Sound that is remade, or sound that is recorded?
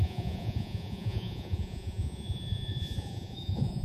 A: remade